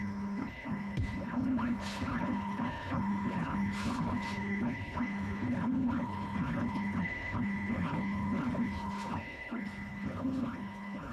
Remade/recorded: remade